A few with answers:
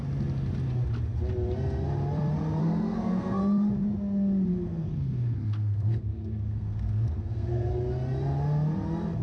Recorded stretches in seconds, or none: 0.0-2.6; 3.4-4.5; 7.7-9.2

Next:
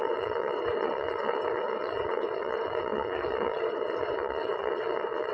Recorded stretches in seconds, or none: none